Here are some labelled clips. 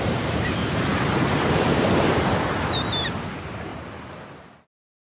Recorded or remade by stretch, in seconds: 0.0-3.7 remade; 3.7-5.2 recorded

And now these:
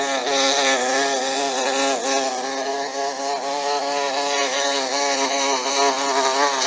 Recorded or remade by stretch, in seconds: 0.0-2.7 recorded; 2.7-3.2 remade; 3.2-4.4 recorded; 4.4-5.7 remade; 5.7-6.7 recorded

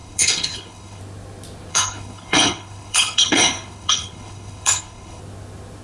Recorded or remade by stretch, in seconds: 0.0-1.0 remade; 1.0-1.7 recorded; 1.7-5.2 remade; 5.2-5.8 recorded

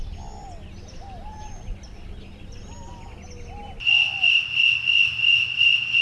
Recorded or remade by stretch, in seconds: 0.0-6.0 recorded

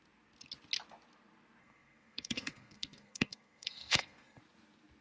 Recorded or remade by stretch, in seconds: 0.0-1.6 recorded; 1.6-4.4 remade; 4.4-5.0 recorded